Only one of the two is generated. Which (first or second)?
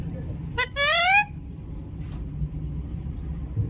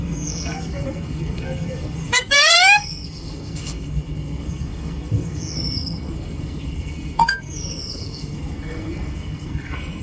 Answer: second